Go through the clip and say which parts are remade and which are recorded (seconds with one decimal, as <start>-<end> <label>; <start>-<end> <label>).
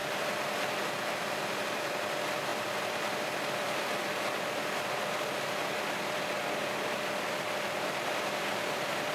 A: 0.0-9.1 recorded